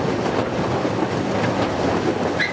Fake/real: real